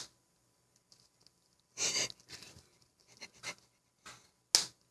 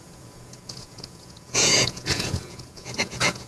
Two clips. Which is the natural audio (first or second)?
first